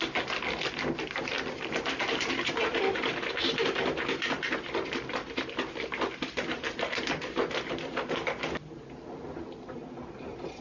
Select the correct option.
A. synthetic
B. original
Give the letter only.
B